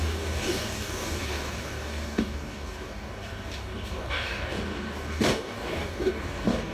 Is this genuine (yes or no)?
no